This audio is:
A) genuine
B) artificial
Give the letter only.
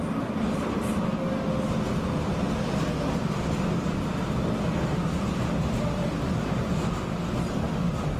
A